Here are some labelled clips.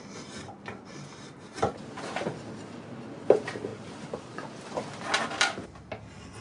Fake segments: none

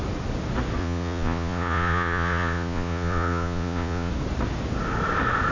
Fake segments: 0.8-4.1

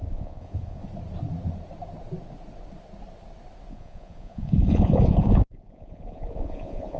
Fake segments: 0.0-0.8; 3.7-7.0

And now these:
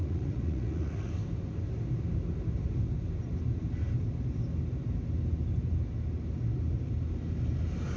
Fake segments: 0.0-1.1